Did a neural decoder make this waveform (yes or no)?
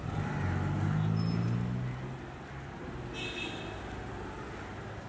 no